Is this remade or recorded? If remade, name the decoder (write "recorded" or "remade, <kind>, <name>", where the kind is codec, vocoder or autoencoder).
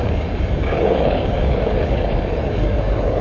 remade, codec, DAC